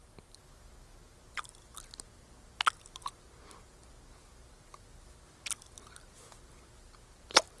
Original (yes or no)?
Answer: yes